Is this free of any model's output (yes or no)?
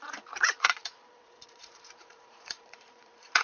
no